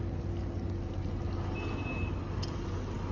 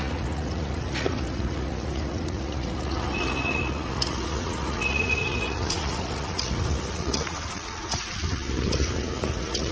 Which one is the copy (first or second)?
second